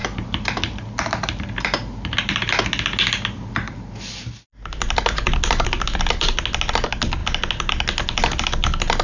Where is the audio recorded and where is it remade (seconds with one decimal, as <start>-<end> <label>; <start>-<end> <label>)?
0.0-9.0 recorded